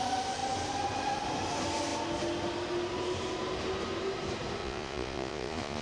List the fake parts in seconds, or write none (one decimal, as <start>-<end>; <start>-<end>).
4.6-5.8